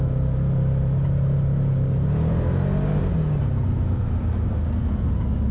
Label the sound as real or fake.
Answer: real